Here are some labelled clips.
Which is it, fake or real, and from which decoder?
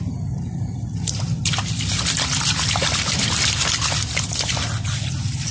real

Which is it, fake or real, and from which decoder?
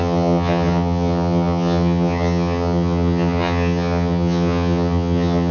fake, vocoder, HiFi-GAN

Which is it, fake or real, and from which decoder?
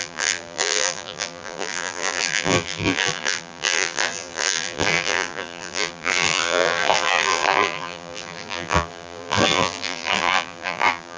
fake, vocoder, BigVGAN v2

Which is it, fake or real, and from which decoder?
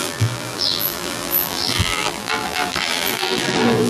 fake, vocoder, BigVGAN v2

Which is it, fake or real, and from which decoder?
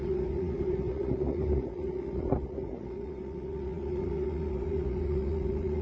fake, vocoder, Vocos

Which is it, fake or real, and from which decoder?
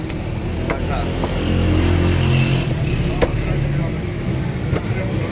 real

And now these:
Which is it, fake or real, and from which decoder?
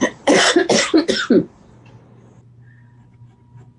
fake, vocoder, BigVGAN v2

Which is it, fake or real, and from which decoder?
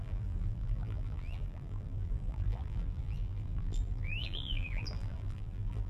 fake, vocoder, BigVGAN v2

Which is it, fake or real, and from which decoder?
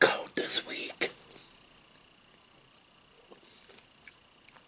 real